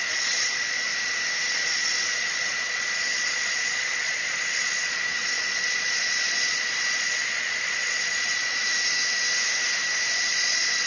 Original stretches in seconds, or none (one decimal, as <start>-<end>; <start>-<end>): 0.9-1.5; 8.6-10.3